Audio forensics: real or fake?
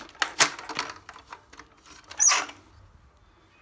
real